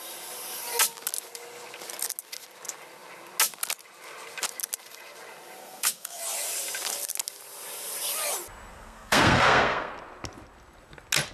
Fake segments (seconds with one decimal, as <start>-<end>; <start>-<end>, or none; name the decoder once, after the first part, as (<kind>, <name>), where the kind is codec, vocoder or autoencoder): 5.6-6.2 (codec, SNAC); 8.7-9.9